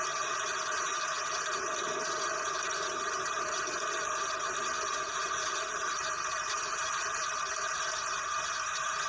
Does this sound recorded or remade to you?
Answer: recorded